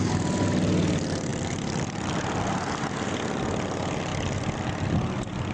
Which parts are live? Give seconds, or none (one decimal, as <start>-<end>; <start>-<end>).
0.0-1.3; 2.9-5.5